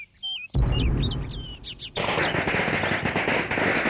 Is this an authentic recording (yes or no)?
yes